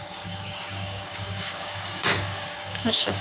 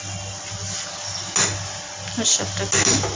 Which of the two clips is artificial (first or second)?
first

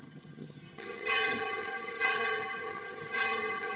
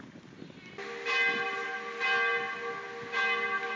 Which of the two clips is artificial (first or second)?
first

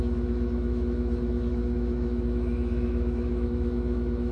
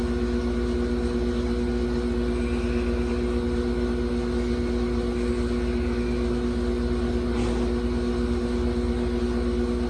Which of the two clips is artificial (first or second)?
first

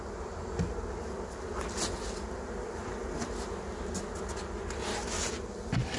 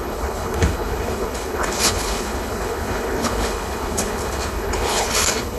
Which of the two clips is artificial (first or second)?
second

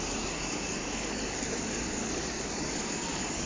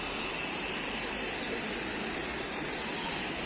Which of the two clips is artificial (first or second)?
first